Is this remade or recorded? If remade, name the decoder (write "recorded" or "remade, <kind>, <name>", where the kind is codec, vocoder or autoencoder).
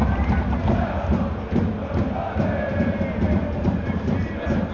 recorded